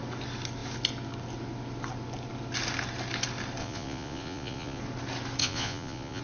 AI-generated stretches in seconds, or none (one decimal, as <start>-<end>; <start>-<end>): 3.6-4.8; 5.4-6.2

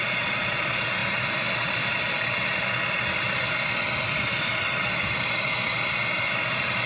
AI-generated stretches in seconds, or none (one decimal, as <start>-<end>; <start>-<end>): none

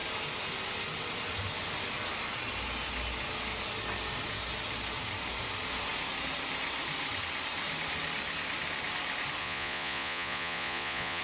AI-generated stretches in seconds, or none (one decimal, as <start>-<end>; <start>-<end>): 9.4-11.2

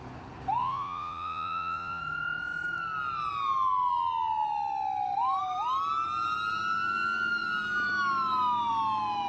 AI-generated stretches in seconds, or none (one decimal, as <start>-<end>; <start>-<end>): 0.6-2.0